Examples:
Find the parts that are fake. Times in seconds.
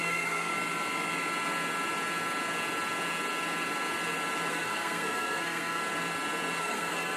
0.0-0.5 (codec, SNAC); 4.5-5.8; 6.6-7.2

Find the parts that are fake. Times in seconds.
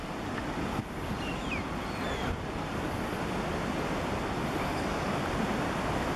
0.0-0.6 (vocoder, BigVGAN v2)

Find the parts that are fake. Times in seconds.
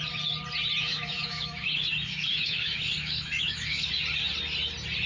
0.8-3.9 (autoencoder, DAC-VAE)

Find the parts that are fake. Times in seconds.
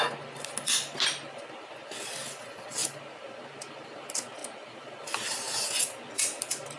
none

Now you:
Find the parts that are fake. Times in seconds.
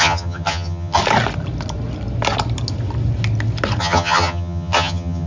0.0-1.0 (vocoder, HiFi-GAN); 3.8-5.3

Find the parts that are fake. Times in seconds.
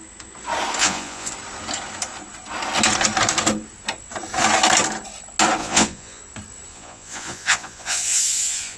0.8-1.3 (vocoder, Vocos); 5.6-6.2; 6.7-8.8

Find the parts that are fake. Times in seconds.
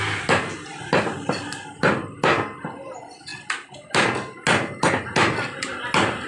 none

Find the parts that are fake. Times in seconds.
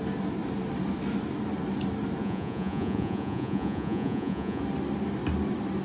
2.2-4.6 (vocoder, Vocos)